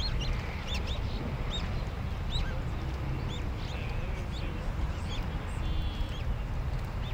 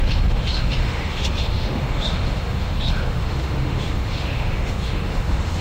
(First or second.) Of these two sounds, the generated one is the second